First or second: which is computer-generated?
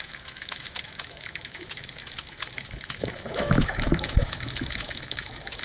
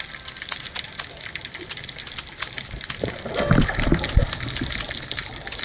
first